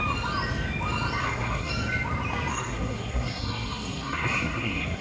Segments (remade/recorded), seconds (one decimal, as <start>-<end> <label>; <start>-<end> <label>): 0.0-1.2 recorded; 1.2-1.7 remade; 1.7-2.5 recorded; 2.5-5.0 remade